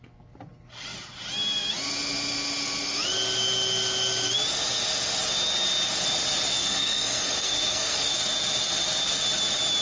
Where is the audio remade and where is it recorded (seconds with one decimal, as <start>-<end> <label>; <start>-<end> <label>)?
0.0-6.6 recorded; 6.6-8.1 remade; 8.1-9.8 recorded